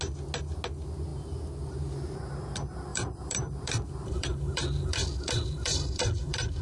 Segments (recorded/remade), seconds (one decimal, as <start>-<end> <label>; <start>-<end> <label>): 0.0-1.1 recorded; 1.1-2.3 remade; 2.3-2.9 recorded; 2.9-6.6 remade

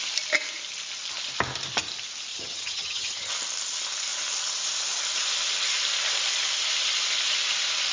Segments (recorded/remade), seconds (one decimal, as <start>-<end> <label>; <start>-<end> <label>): 0.0-2.3 recorded; 2.3-3.3 remade; 3.3-7.9 recorded